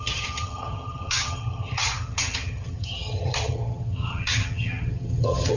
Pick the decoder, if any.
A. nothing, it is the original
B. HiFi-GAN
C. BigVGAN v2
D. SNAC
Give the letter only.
B